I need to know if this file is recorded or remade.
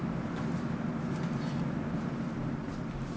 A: recorded